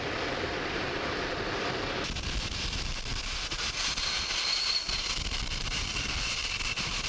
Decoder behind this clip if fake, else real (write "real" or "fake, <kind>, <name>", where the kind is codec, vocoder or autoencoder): fake, vocoder, BigVGAN v2